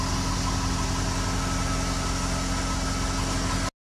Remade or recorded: recorded